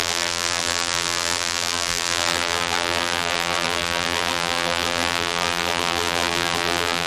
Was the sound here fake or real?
fake